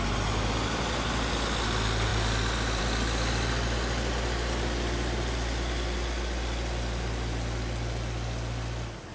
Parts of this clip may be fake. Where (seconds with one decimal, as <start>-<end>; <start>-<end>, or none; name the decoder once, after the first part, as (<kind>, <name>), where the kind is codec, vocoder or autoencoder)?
none